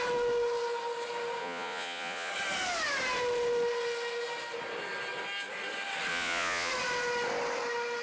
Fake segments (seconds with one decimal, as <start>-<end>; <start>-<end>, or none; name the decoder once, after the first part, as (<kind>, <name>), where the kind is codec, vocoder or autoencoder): 1.4-2.3 (vocoder, Vocos); 6.1-6.7